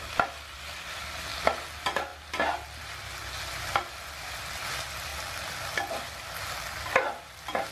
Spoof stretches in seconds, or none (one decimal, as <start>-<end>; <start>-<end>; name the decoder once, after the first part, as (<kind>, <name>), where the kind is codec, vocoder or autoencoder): none